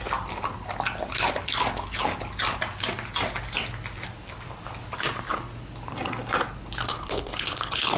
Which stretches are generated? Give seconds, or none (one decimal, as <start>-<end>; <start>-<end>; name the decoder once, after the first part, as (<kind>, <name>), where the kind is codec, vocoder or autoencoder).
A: 6.9-8.0 (codec, HILCodec)